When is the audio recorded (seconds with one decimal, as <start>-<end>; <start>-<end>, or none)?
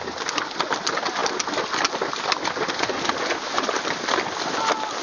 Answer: 0.0-5.0